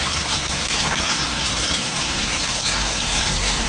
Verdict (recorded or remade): remade